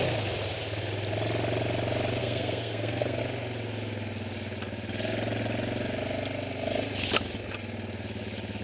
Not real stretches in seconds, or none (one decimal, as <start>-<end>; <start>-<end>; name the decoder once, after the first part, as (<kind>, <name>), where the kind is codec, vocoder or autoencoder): 2.2-3.2 (codec, SNAC)